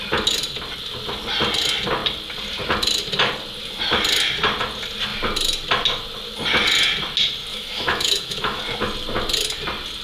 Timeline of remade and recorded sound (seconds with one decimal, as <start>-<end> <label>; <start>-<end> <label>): 0.0-7.5 recorded; 7.5-8.6 remade; 8.6-10.0 recorded